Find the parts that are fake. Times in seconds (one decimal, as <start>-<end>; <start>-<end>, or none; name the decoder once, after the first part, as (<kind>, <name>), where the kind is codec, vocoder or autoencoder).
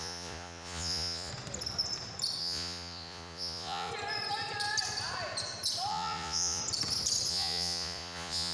0.0-1.3 (vocoder, Vocos); 2.4-3.9; 5.9-6.6; 7.3-8.5